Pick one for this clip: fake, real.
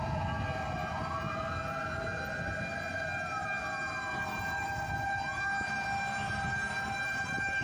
real